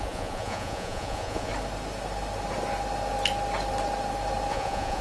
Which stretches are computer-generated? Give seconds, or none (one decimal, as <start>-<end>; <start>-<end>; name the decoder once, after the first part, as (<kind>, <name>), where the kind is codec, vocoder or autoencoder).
0.0-1.5 (vocoder, Vocos); 4.5-5.0